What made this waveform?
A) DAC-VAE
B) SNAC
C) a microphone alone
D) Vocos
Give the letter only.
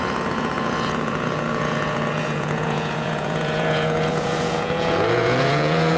D